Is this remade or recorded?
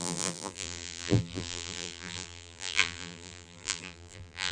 remade